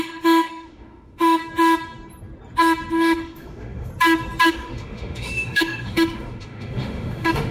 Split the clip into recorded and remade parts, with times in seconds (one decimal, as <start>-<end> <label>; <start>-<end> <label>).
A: 0.0-1.4 remade; 1.4-2.9 recorded; 2.9-3.9 remade; 3.9-4.5 recorded; 4.5-7.5 remade